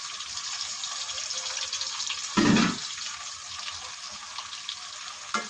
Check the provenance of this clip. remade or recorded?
recorded